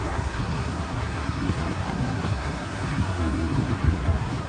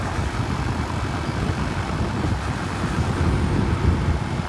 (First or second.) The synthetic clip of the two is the first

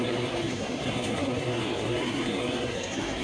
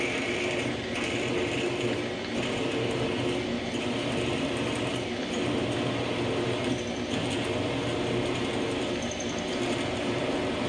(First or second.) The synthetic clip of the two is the first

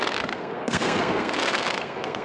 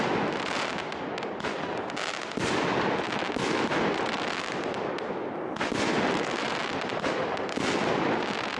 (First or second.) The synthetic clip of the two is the first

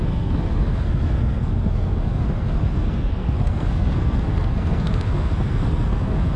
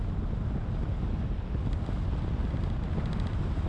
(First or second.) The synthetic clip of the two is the first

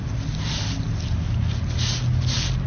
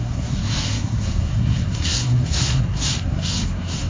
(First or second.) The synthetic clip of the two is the second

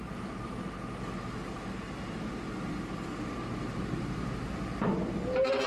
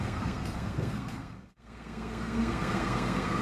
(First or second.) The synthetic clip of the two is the second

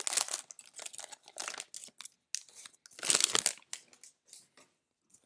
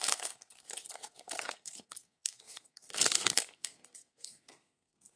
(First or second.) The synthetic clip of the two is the second